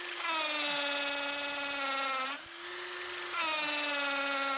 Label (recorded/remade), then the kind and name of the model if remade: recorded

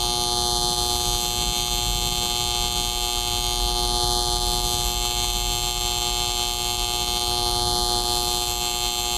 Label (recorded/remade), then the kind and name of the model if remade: recorded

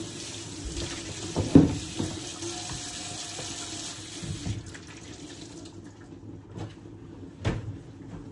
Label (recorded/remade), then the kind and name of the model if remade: recorded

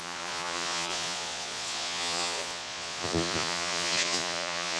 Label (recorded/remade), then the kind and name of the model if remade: remade, vocoder, Vocos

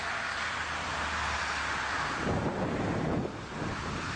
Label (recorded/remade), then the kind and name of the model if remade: recorded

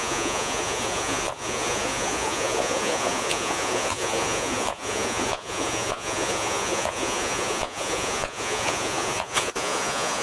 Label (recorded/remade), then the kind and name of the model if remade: remade, vocoder, Vocos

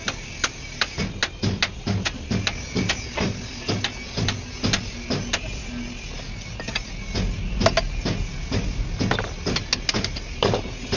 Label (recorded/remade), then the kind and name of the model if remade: recorded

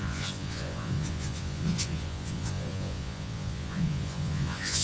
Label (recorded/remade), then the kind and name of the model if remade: remade, vocoder, Vocos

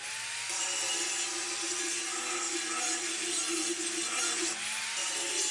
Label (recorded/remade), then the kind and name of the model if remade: recorded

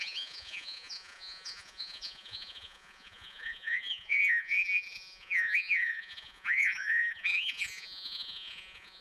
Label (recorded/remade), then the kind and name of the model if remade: remade, vocoder, Vocos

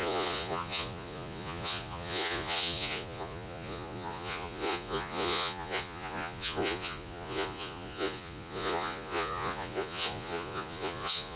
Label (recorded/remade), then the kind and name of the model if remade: remade, vocoder, Vocos